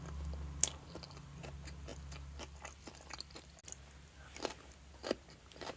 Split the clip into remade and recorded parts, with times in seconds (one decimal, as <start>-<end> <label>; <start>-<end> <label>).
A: 0.0-5.8 recorded